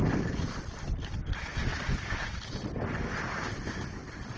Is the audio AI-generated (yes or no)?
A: no